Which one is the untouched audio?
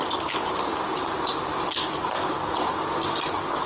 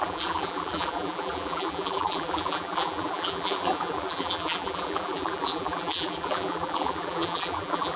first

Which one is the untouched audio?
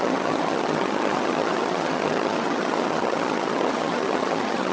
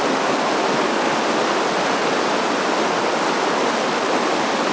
second